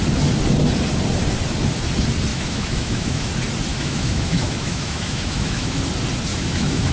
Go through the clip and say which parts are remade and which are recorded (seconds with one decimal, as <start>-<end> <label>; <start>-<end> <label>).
0.0-2.3 recorded; 2.3-3.3 remade; 3.3-3.7 recorded; 3.7-5.8 remade; 5.8-6.3 recorded; 6.3-6.9 remade